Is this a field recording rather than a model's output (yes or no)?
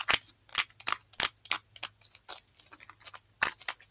yes